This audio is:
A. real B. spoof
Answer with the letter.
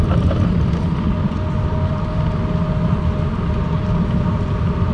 A